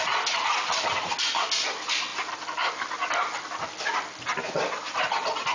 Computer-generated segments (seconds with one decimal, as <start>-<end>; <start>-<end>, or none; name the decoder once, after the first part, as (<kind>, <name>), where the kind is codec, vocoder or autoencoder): none